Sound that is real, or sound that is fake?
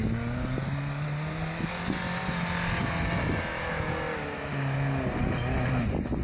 real